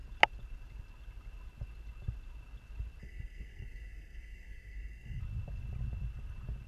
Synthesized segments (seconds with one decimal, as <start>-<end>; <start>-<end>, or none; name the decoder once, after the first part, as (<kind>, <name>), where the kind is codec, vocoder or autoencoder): 3.0-5.2 (codec, SNAC)